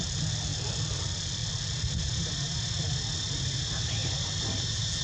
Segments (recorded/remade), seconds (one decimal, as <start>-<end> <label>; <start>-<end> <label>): 0.0-4.0 recorded; 4.0-4.6 remade; 4.6-5.0 recorded